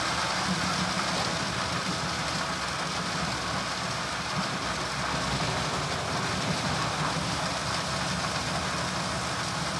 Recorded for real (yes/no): yes